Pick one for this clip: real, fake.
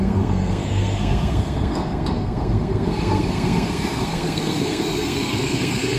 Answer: fake